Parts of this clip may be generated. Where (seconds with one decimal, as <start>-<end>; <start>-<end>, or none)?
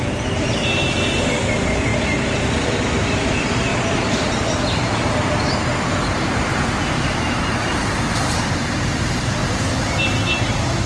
0.0-10.9